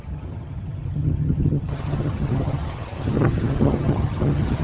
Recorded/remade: remade